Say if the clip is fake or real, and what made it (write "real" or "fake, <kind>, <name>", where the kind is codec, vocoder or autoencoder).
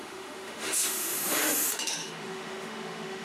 fake, autoencoder, DAC-VAE